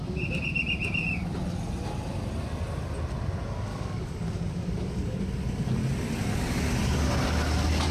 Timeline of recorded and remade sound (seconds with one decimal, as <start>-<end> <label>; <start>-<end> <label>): 0.0-3.7 recorded; 3.7-5.2 remade; 5.2-7.9 recorded